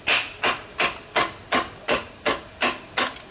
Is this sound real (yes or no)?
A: yes